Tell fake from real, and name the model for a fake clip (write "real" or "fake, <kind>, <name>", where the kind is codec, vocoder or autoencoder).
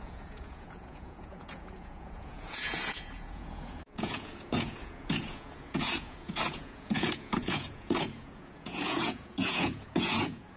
fake, vocoder, Vocos